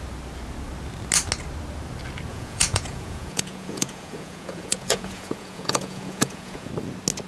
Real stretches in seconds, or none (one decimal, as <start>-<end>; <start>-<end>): 0.0-2.3; 6.7-7.3

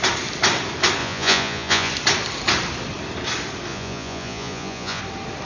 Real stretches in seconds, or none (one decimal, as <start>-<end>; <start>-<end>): 0.0-1.0; 1.9-3.7; 5.0-5.5

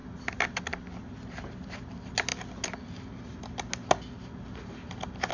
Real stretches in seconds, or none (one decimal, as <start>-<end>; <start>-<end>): 0.0-5.3

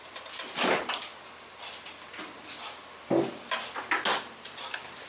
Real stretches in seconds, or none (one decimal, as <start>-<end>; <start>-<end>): 0.0-5.1

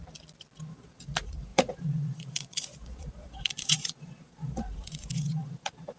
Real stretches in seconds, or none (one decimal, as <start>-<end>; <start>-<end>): 0.0-0.7

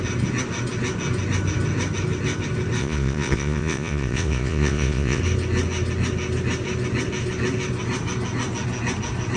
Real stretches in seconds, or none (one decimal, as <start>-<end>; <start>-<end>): 0.0-2.8; 5.2-9.4

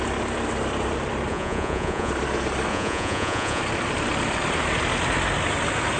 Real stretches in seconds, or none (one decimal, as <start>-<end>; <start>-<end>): 0.0-1.3; 2.1-2.7; 3.6-6.0